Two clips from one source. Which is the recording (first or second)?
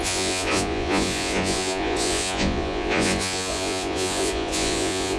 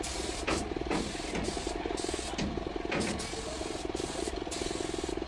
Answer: second